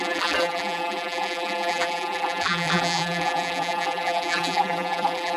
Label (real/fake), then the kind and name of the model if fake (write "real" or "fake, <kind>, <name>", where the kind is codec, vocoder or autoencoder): fake, vocoder, BigVGAN v2